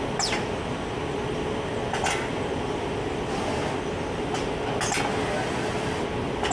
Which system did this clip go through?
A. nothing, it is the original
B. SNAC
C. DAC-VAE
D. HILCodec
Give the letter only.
A